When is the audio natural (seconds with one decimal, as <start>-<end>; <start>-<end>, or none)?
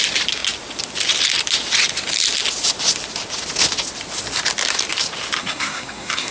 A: 0.0-5.4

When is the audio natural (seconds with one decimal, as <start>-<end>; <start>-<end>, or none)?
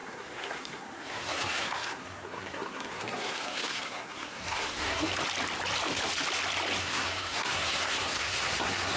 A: 5.1-6.8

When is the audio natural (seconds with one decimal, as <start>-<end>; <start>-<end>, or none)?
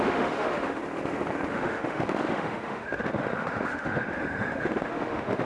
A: 0.8-1.5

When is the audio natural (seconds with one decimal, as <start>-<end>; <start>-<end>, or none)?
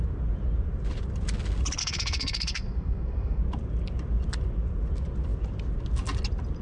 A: 0.0-1.8; 3.4-6.6